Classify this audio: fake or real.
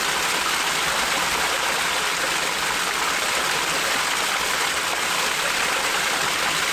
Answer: real